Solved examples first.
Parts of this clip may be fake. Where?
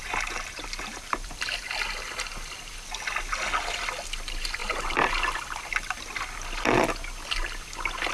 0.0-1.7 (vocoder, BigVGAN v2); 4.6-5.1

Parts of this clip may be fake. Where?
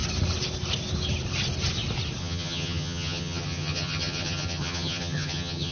2.2-5.7 (vocoder, HiFi-GAN)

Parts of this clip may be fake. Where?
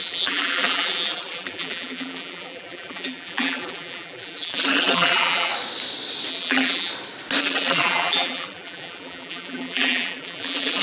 0.0-5.5 (vocoder, BigVGAN v2); 6.3-6.9; 7.4-10.8